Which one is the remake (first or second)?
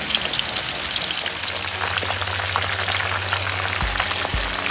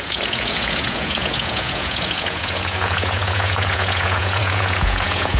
second